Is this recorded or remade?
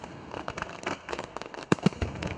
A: remade